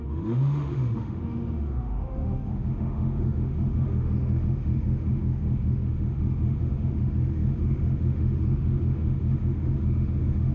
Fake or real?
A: fake